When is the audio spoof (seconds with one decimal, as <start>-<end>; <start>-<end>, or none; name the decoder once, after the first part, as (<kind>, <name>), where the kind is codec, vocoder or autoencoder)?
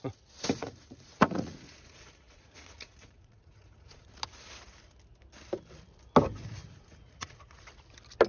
0.6-4.1 (vocoder, Vocos); 6.6-7.6